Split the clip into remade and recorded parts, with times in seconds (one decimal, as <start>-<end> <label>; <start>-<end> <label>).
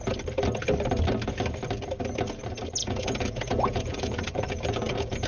0.0-2.8 recorded; 2.8-5.3 remade